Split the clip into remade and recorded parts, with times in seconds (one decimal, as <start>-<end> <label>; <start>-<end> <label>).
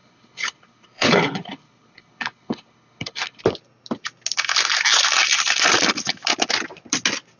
0.0-3.4 remade; 3.4-7.4 recorded